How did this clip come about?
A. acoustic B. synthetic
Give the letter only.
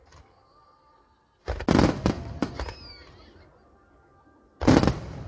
A